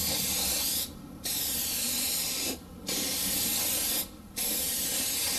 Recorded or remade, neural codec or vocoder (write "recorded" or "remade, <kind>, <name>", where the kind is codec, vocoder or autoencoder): recorded